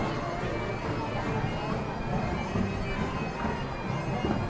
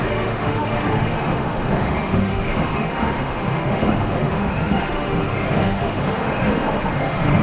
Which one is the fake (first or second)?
second